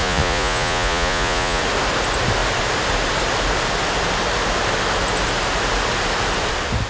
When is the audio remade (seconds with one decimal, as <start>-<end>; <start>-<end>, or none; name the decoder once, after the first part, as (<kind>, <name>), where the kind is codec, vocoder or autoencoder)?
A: 0.0-1.6 (vocoder, Vocos)